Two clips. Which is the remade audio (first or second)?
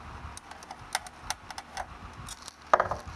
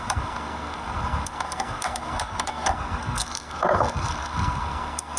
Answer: second